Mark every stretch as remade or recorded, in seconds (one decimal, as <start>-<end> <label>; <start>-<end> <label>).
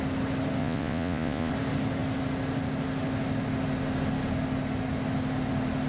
0.0-0.6 recorded; 0.6-1.5 remade; 1.5-5.9 recorded